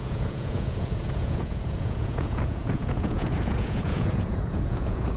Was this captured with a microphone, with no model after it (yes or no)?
no